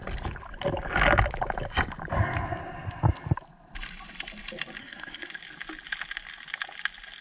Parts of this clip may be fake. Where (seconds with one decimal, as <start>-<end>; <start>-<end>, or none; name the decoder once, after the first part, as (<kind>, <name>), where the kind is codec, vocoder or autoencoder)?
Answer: 4.8-5.3 (codec, SNAC)